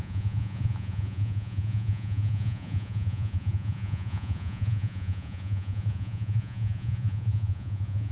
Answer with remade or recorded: remade